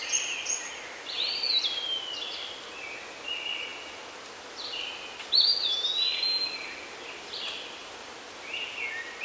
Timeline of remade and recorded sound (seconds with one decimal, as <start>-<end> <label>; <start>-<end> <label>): 0.0-7.8 recorded; 7.8-8.6 remade; 8.6-9.2 recorded